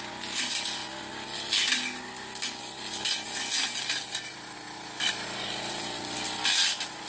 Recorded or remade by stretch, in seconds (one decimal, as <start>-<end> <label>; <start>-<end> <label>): 0.0-7.1 recorded

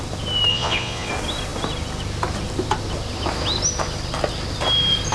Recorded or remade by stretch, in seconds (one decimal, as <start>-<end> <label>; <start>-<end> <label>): 0.0-0.5 recorded; 0.5-1.1 remade; 1.1-5.1 recorded

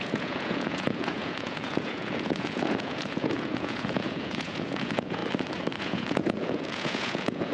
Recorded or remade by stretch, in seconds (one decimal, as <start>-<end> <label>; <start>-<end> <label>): 0.0-5.2 remade; 5.2-5.8 recorded; 5.8-7.5 remade

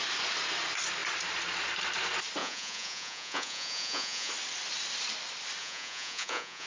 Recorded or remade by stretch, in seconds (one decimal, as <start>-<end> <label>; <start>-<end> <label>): 0.0-2.4 recorded; 2.4-4.3 remade; 4.3-5.6 recorded; 5.6-6.7 remade

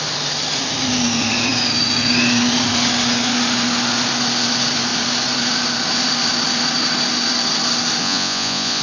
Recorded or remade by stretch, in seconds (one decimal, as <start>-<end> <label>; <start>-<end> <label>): 0.0-8.0 recorded; 8.0-8.8 remade

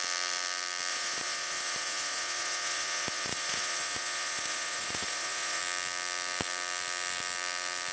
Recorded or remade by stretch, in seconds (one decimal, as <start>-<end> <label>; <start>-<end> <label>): 0.0-0.9 recorded; 0.9-5.6 remade; 5.6-7.9 recorded

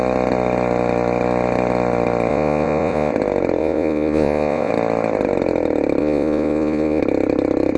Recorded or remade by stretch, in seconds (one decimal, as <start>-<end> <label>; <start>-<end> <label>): 0.0-2.3 recorded; 2.3-3.1 remade; 3.1-3.6 recorded; 3.6-4.7 remade; 4.7-6.0 recorded; 6.0-7.0 remade; 7.0-7.8 recorded